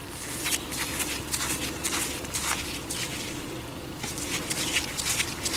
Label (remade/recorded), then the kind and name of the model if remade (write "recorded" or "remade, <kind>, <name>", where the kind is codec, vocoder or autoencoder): recorded